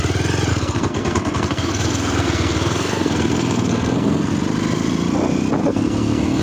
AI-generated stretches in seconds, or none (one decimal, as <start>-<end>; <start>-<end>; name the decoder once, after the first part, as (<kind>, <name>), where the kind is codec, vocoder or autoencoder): 0.5-4.3 (codec, SNAC); 5.6-6.4